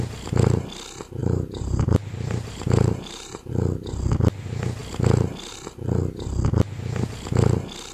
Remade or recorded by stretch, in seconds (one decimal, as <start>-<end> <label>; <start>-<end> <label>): 0.0-1.2 recorded; 1.2-3.5 remade; 3.5-7.9 recorded